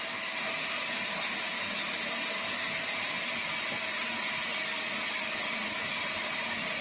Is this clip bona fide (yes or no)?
yes